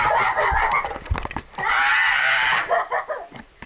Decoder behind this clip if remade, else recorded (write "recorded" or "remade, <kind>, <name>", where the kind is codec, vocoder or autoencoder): recorded